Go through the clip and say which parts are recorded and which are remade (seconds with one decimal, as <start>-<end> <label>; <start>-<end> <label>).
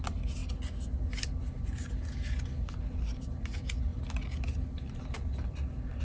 0.0-6.0 recorded